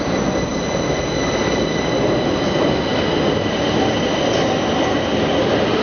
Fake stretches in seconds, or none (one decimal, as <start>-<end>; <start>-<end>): none